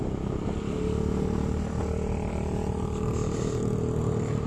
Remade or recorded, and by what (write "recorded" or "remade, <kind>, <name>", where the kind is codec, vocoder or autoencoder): recorded